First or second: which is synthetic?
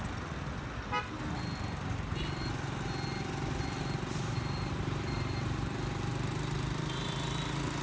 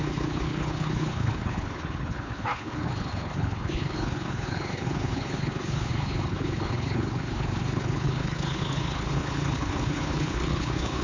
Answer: second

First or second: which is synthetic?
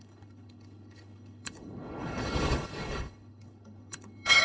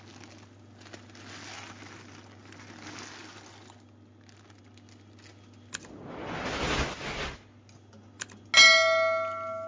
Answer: first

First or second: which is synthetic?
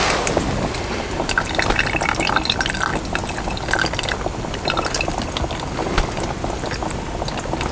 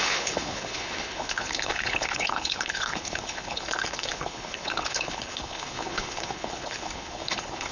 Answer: second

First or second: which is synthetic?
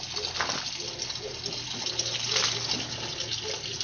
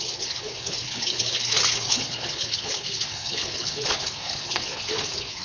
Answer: second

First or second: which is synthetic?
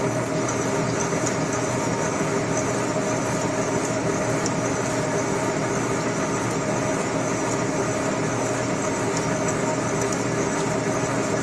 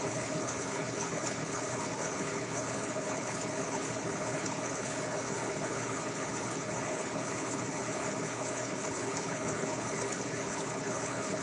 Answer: second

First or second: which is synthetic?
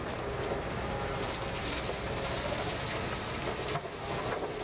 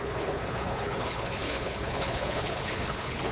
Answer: second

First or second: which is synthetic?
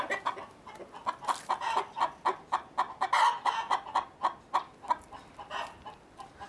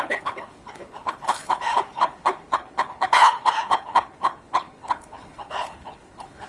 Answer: second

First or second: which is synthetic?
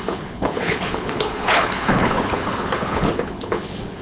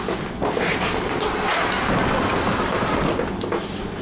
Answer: first